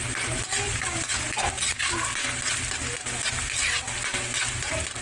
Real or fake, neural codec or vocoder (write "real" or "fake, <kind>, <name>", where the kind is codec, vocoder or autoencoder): real